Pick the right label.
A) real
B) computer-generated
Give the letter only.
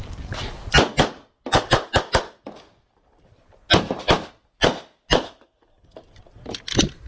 A